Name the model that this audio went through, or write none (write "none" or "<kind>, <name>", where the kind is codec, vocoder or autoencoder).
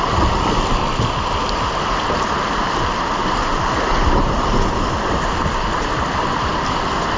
none